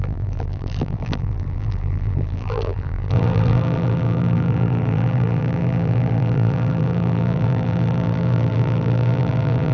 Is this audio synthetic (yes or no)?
yes